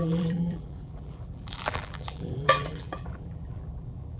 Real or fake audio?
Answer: fake